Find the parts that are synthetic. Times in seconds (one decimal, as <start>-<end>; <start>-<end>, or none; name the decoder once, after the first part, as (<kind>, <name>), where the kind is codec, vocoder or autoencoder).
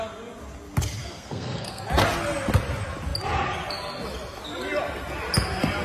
1.0-1.8 (codec, SNAC)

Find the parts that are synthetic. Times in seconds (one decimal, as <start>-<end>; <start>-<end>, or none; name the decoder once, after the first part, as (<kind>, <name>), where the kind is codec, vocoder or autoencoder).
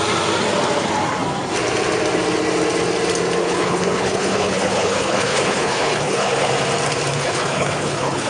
3.4-6.5 (codec, HILCodec); 7.1-8.3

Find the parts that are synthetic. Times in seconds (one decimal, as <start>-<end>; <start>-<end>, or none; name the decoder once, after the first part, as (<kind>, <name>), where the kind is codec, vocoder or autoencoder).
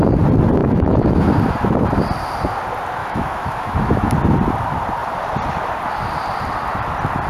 0.6-1.3 (autoencoder, DAC-VAE); 3.0-4.1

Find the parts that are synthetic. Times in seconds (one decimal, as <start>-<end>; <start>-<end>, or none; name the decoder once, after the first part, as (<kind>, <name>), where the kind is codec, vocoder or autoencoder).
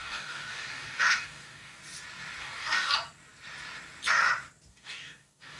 0.0-1.8 (codec, DAC); 2.4-2.9; 4.7-5.6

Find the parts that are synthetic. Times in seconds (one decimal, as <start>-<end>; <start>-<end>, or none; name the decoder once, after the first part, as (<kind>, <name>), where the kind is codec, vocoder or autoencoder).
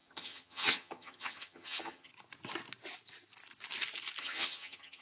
0.0-2.1 (vocoder, HiFi-GAN); 4.2-5.0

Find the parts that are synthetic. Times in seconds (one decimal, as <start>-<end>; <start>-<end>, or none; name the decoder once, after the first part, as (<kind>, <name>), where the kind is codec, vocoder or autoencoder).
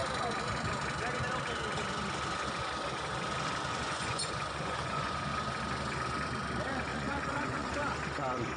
3.7-5.3 (vocoder, Vocos); 6.9-7.8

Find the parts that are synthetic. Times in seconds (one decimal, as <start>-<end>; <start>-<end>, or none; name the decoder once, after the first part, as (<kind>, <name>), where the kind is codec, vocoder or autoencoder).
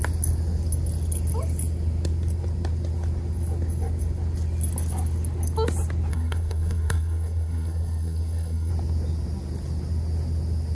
6.1-8.7 (codec, SNAC)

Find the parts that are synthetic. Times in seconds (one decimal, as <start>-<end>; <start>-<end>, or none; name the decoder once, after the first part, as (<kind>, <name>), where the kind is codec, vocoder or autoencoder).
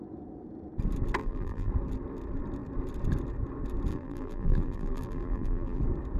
1.2-1.7 (vocoder, BigVGAN v2); 3.9-5.8